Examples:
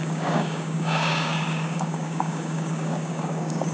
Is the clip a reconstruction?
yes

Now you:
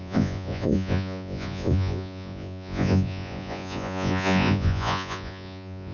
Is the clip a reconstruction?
yes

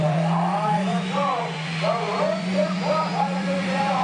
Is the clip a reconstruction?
yes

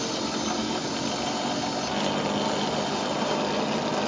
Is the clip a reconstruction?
no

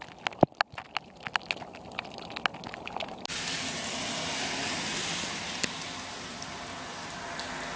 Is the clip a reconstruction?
no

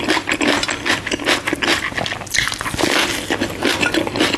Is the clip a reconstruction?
no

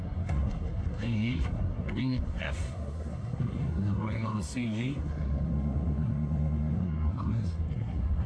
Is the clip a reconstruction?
yes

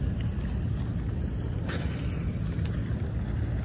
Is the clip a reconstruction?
yes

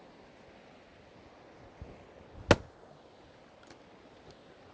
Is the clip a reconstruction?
no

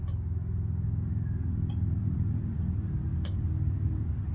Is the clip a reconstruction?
no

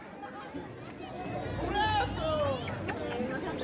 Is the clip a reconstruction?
no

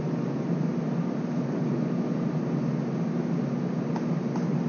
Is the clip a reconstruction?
no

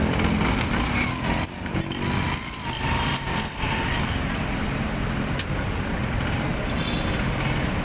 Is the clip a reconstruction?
no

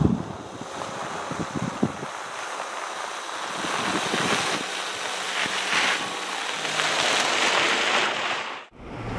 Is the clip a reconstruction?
no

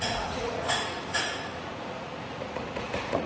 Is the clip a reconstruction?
yes